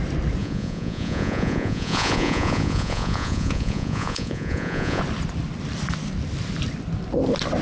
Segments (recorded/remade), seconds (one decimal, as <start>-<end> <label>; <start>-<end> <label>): 0.0-0.4 recorded; 0.4-5.0 remade; 5.0-7.6 recorded